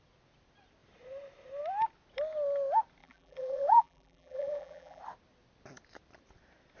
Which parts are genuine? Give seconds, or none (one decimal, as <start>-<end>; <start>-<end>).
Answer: 0.0-3.0; 5.0-6.8